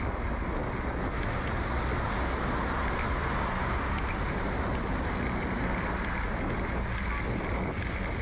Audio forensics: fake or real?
real